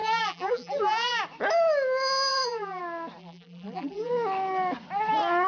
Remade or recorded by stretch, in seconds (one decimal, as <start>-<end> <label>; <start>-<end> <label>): 0.0-1.2 remade; 1.2-2.3 recorded; 2.3-2.8 remade; 2.8-3.2 recorded; 3.2-4.1 remade; 4.1-5.5 recorded

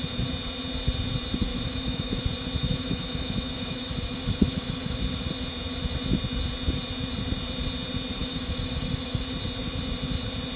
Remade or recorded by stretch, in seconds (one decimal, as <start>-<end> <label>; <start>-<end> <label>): 0.0-1.5 recorded; 1.5-2.2 remade; 2.2-2.6 recorded; 2.6-5.0 remade; 5.0-8.2 recorded; 8.2-9.2 remade; 9.2-10.6 recorded